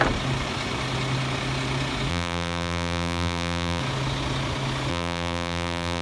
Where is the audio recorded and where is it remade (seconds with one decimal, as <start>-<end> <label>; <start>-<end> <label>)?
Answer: 0.0-2.1 recorded; 2.1-3.8 remade; 3.8-4.9 recorded; 4.9-6.0 remade